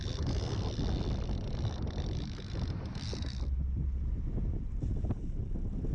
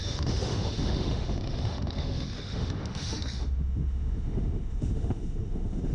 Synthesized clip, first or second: second